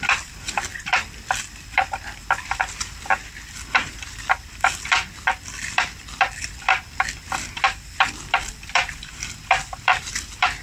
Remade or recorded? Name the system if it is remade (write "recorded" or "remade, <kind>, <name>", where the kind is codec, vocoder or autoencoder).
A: remade, vocoder, BigVGAN v2